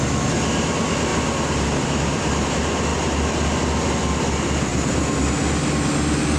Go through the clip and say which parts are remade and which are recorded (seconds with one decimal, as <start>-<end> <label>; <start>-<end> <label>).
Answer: 0.0-1.1 recorded; 1.1-2.5 remade; 2.5-4.7 recorded; 4.7-5.3 remade; 5.3-6.4 recorded